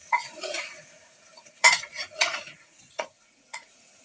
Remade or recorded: remade